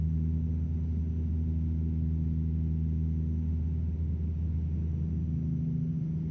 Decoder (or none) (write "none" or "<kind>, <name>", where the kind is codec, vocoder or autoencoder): none